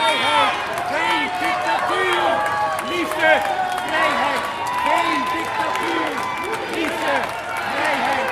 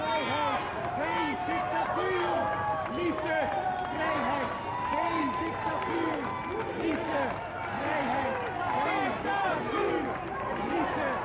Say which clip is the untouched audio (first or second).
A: first